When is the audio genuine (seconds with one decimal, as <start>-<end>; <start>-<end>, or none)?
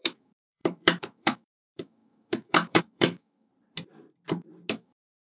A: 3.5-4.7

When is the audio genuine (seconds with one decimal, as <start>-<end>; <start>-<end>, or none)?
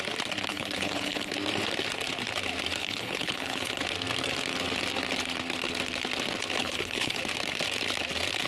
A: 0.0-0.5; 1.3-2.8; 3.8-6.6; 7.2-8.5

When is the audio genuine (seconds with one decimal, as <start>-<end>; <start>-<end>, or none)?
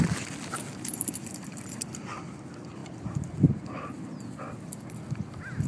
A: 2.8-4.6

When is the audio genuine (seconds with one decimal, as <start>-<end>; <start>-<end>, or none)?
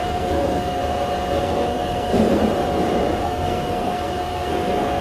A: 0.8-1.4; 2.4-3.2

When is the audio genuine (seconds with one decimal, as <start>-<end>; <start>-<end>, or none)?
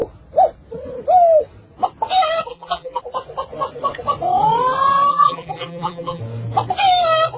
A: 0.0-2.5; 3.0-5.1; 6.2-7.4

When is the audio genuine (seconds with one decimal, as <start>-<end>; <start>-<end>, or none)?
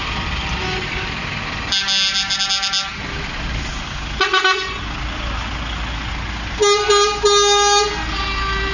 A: 0.0-8.7